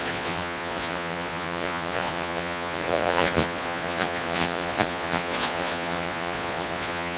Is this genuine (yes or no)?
no